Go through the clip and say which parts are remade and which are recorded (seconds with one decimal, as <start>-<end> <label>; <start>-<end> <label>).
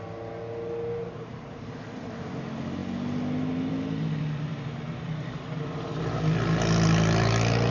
0.0-1.0 recorded; 1.0-1.8 remade; 1.8-7.7 recorded